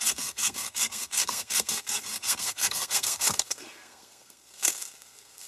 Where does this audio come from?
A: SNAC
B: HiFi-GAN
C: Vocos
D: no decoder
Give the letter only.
A